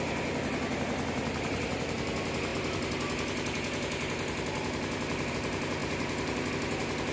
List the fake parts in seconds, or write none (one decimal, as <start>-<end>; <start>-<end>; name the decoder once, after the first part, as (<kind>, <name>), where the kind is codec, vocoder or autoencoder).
none